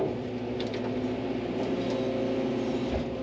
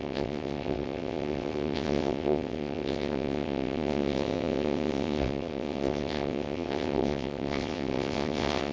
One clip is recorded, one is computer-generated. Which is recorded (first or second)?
first